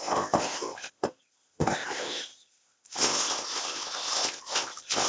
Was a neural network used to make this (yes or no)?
yes